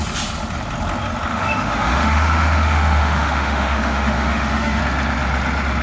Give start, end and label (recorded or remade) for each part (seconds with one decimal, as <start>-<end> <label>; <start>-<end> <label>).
0.0-1.3 recorded; 1.3-4.8 remade; 4.8-5.8 recorded